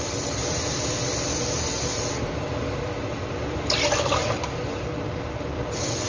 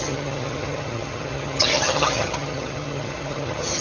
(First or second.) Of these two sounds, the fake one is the second